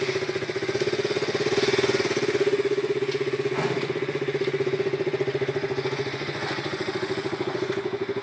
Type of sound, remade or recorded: remade